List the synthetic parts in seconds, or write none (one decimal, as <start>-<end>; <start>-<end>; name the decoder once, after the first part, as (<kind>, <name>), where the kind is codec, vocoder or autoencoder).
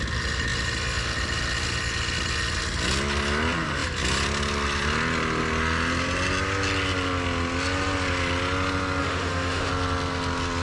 9.0-9.7 (autoencoder, DAC-VAE)